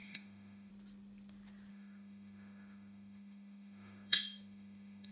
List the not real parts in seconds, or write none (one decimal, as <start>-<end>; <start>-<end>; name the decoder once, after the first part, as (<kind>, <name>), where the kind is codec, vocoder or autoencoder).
0.0-0.7 (autoencoder, DAC-VAE); 1.7-5.1